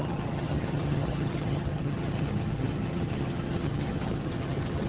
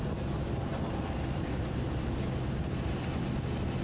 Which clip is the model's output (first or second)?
first